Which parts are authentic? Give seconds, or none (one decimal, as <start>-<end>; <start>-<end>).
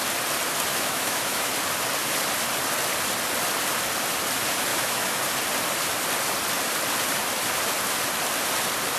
0.0-0.7; 1.5-4.7; 5.2-9.0